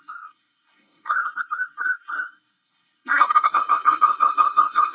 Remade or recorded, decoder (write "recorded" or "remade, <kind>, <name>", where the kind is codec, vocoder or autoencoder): remade, codec, SNAC